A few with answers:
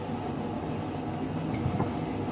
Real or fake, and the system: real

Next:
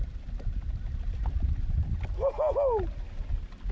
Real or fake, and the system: real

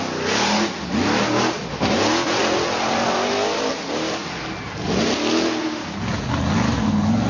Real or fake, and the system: real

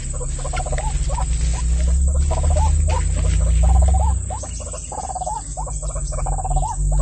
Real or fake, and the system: real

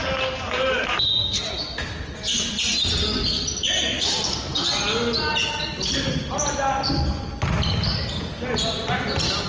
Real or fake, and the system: real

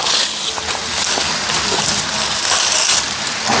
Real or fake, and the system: real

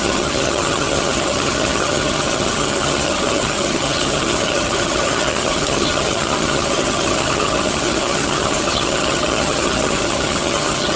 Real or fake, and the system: fake, vocoder, HiFi-GAN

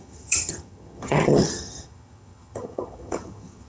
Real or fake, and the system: fake, vocoder, HiFi-GAN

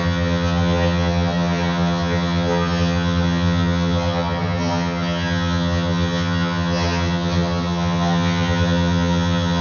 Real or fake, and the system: fake, vocoder, HiFi-GAN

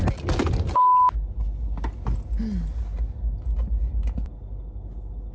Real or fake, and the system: real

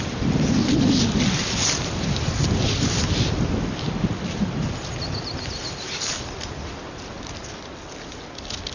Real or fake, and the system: real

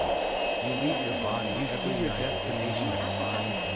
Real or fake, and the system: real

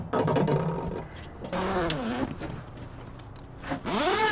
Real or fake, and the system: real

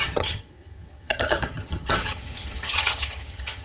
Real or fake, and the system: fake, vocoder, HiFi-GAN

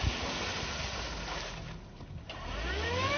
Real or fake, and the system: real